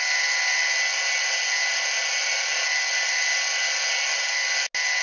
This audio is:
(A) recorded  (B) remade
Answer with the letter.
A